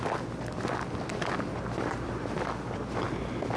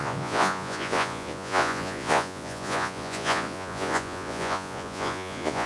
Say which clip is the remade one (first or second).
second